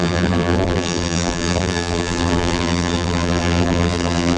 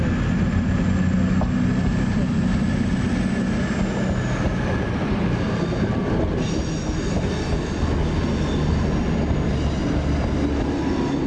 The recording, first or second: second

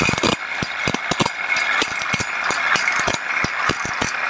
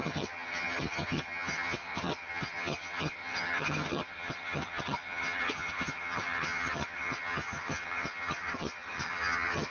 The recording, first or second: first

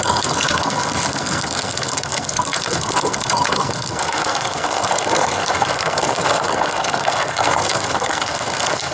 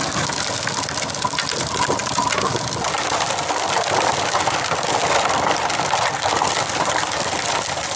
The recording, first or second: second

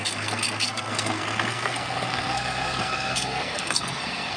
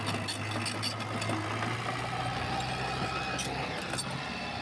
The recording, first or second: second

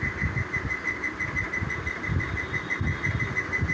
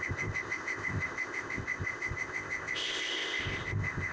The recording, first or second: first